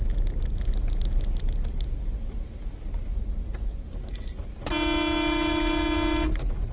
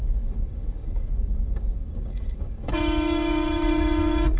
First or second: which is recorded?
first